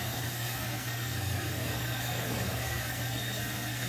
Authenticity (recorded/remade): remade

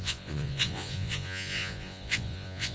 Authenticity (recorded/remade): remade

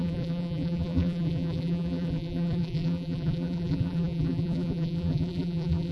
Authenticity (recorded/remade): remade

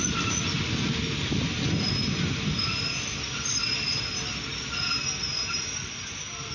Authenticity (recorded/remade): recorded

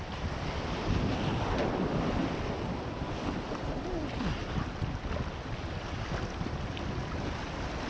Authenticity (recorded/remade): recorded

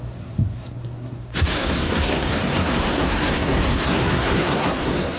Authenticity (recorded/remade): remade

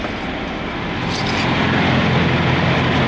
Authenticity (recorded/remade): recorded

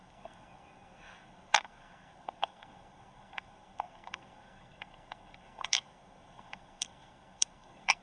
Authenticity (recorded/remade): remade